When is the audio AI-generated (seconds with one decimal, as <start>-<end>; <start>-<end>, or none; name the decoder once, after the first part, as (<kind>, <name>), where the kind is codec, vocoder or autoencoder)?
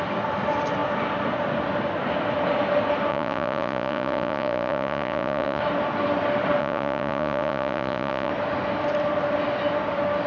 3.1-5.6 (vocoder, Vocos); 6.6-8.3